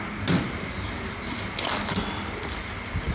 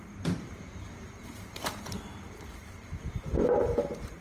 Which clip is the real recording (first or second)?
first